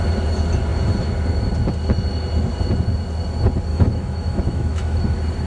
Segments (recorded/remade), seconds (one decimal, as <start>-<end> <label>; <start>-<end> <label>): 0.0-3.7 recorded; 3.7-5.0 remade; 5.0-5.5 recorded